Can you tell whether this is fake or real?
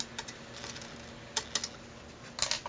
real